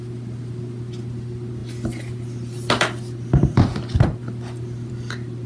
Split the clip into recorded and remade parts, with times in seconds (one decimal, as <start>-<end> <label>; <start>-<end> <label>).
0.0-5.5 recorded